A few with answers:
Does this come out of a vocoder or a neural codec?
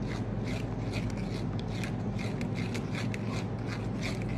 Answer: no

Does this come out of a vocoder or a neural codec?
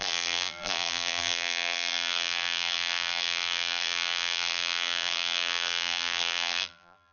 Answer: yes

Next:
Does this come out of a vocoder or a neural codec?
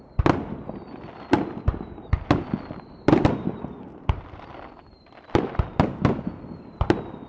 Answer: yes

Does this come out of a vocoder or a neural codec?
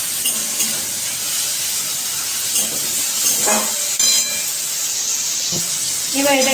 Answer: no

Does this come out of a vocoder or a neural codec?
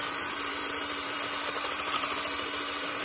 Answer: yes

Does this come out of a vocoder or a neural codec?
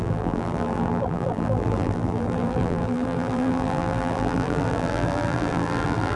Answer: yes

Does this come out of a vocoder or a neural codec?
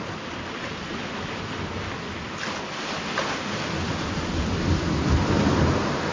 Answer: no